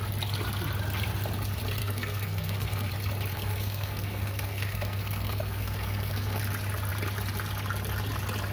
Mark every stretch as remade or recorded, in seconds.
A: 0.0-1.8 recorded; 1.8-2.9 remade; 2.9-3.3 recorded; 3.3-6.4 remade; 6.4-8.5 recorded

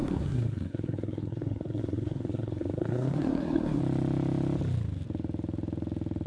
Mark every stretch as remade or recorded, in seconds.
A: 0.0-3.8 remade; 3.8-6.3 recorded

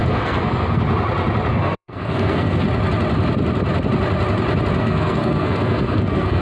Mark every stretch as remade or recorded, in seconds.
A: 0.0-0.8 remade; 0.8-1.5 recorded; 1.5-2.6 remade; 2.6-4.8 recorded; 4.8-6.4 remade